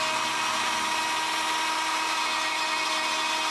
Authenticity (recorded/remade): recorded